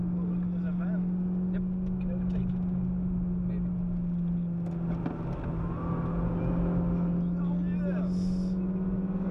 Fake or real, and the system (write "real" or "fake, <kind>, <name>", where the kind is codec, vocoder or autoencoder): real